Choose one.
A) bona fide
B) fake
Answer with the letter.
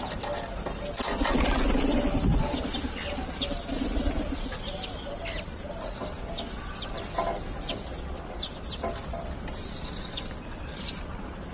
A